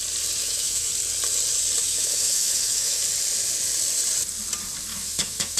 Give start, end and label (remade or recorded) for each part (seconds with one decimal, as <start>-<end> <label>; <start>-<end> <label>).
0.0-0.4 recorded; 0.4-0.9 remade; 0.9-1.8 recorded; 1.8-3.0 remade; 3.0-4.9 recorded; 4.9-5.6 remade